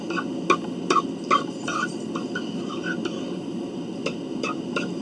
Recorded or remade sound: recorded